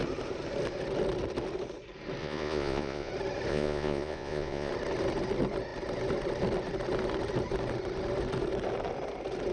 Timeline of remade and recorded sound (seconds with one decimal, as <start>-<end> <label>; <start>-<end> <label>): 0.0-2.2 recorded; 2.2-3.1 remade; 3.1-3.5 recorded; 3.5-4.7 remade; 4.7-9.5 recorded